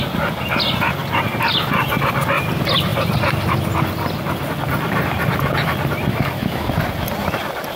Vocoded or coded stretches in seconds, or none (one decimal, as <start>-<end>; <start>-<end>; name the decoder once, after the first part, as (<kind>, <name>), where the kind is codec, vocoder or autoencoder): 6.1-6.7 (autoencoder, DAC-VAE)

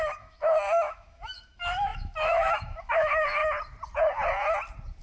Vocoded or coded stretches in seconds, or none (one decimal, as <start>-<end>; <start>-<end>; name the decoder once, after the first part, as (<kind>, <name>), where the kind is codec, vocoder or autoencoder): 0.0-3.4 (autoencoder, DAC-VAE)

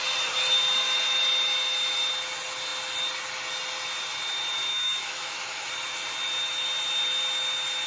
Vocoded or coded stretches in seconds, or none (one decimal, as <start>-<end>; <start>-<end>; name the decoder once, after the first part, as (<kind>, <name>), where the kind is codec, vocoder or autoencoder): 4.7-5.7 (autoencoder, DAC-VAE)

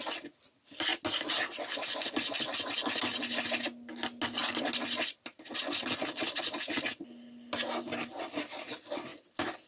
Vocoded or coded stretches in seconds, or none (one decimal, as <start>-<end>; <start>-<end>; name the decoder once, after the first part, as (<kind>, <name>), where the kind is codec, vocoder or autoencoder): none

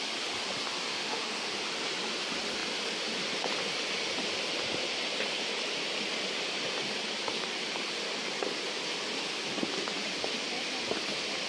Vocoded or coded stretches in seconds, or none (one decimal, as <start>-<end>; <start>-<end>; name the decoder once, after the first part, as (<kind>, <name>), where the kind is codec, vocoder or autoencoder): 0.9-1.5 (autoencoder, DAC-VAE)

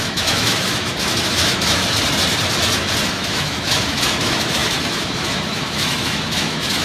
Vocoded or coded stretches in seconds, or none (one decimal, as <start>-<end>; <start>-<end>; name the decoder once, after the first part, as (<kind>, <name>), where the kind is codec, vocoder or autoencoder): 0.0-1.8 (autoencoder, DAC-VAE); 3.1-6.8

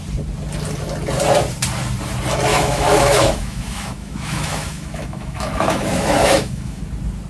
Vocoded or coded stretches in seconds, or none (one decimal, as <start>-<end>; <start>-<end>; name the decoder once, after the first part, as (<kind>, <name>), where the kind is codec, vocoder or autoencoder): 2.5-6.8 (autoencoder, DAC-VAE)